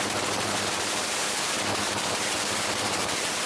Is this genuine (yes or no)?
no